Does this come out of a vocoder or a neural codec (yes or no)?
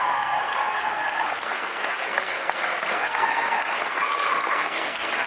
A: yes